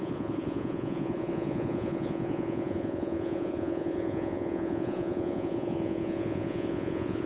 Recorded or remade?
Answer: remade